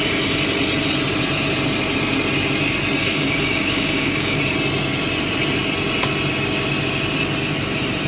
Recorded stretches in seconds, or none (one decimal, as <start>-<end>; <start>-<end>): 0.0-3.0; 4.5-8.1